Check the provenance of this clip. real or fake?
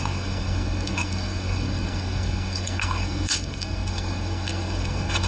fake